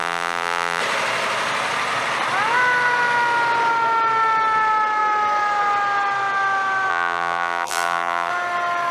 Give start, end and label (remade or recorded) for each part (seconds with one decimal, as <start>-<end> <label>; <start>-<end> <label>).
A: 0.0-0.8 remade; 0.8-6.9 recorded; 6.9-8.3 remade; 8.3-8.9 recorded